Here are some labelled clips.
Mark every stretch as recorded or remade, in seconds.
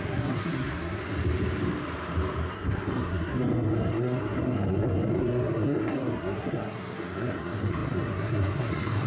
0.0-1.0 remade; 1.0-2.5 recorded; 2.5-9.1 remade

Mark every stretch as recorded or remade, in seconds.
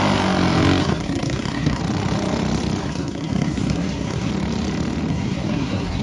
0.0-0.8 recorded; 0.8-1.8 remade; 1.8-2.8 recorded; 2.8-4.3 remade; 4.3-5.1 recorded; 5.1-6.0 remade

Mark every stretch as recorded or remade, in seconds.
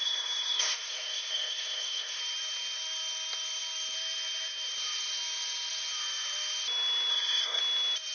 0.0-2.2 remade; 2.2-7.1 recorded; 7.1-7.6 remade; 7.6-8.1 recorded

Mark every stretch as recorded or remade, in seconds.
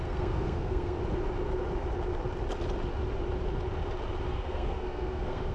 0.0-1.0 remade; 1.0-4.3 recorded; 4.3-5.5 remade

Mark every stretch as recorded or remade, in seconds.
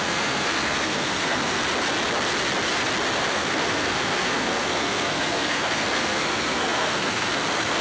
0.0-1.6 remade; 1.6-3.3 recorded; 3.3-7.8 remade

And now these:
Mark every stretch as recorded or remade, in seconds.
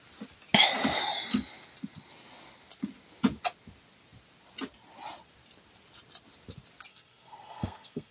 0.0-6.9 recorded; 6.9-8.1 remade